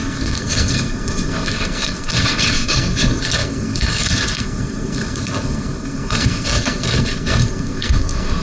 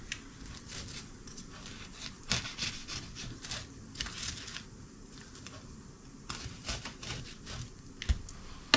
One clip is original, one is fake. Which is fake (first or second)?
first